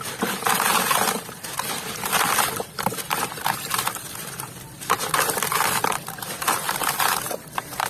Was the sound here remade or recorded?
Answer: remade